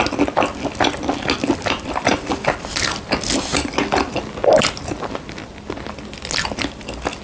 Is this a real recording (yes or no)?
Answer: yes